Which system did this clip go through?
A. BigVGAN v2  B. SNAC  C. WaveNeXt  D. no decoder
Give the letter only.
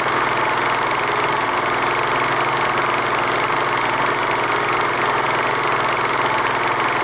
D